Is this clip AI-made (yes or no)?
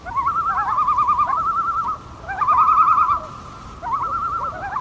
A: no